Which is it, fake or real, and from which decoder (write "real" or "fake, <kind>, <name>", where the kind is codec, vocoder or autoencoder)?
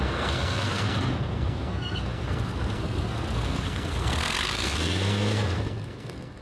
fake, codec, SNAC